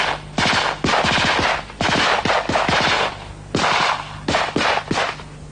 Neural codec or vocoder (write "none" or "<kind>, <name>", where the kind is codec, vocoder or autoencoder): none